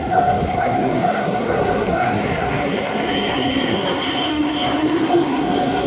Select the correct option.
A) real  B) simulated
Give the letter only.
B